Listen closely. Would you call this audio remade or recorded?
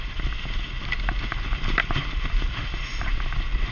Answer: recorded